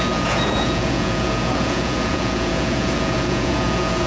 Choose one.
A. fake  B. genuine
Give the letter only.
A